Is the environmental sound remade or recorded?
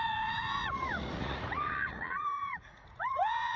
remade